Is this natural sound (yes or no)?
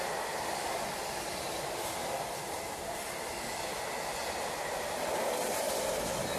yes